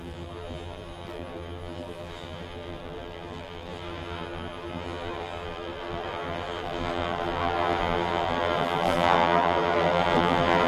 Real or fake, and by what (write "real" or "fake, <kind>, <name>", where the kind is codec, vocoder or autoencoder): fake, vocoder, BigVGAN v2